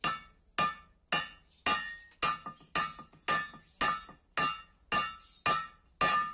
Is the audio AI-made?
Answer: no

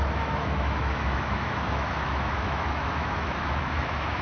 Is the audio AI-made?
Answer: yes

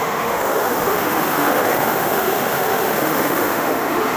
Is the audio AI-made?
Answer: yes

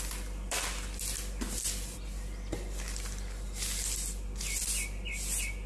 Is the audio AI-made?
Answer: no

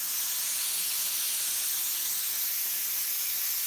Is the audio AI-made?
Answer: yes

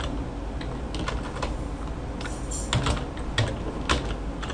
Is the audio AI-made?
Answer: no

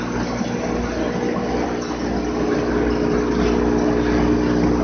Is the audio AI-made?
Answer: no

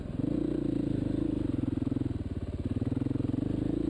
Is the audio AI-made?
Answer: no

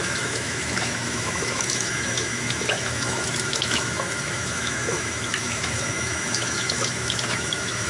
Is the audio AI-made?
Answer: yes